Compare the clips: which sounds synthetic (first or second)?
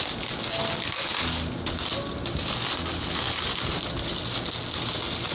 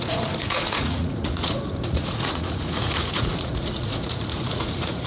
second